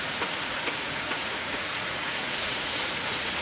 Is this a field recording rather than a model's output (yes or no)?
no